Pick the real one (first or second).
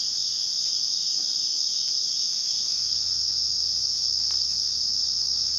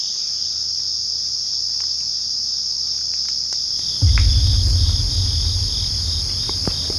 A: second